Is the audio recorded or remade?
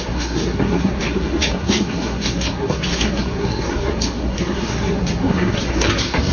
remade